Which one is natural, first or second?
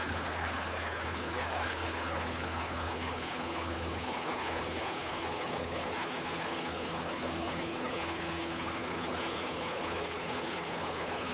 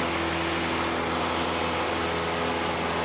second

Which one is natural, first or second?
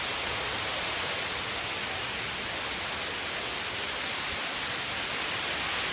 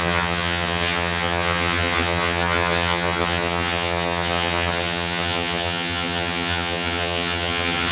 first